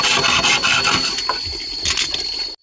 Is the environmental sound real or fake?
real